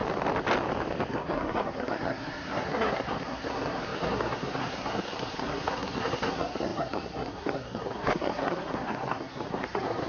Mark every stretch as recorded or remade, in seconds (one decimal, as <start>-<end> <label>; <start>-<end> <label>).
0.0-1.1 recorded; 1.1-10.1 remade